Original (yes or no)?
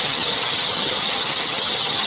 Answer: no